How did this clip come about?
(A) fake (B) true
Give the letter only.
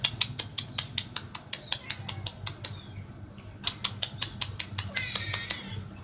B